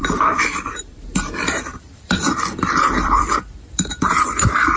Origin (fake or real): fake